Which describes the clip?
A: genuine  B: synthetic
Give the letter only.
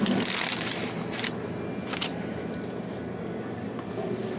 A